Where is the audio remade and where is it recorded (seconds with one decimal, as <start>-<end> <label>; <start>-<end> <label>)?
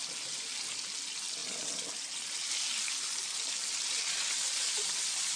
0.0-5.4 recorded